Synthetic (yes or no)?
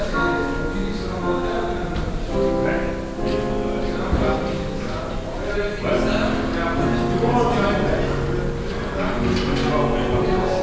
no